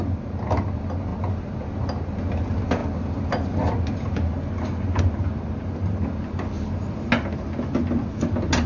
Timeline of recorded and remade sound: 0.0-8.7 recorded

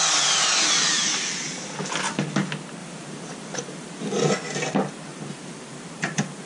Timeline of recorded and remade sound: 0.0-2.8 recorded; 2.8-4.3 remade; 4.3-5.1 recorded; 5.1-6.5 remade

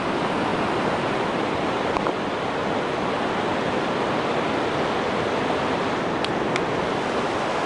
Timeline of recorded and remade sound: 0.0-2.6 remade; 2.6-7.2 recorded; 7.2-7.7 remade